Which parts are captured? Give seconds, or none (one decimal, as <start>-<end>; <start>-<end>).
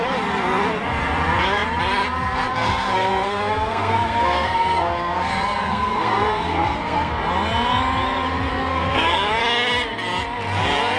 0.0-2.5; 7.1-8.5; 9.4-11.0